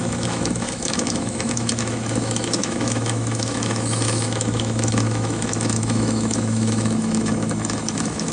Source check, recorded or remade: remade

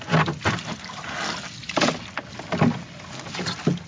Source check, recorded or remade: recorded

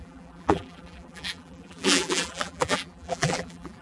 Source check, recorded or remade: remade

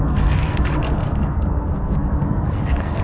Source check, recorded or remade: remade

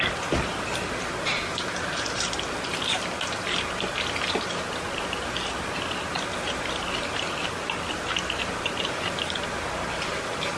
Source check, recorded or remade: remade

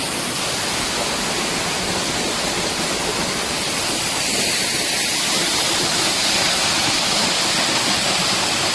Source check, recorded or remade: recorded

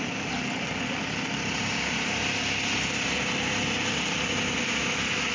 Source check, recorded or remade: recorded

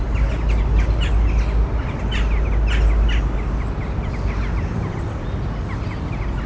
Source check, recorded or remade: recorded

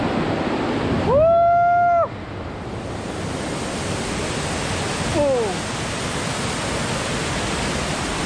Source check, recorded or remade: recorded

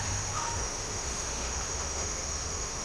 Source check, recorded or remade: remade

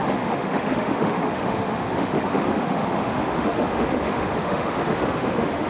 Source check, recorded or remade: remade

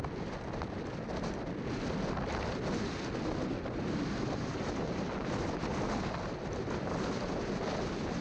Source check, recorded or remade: recorded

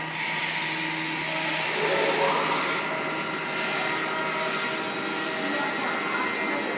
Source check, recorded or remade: recorded